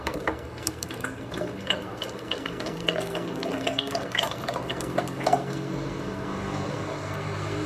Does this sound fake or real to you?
fake